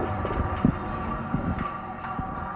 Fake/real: real